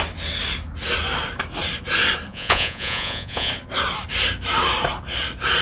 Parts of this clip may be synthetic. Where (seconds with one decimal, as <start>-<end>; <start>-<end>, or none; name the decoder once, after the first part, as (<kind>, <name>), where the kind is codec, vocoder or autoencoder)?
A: 2.3-3.5 (vocoder, Vocos)